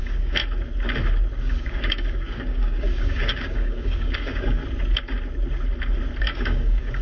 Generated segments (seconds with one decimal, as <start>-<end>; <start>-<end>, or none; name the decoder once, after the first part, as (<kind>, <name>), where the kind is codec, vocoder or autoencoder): 0.0-0.4 (codec, DAC); 1.4-4.6; 6.2-7.0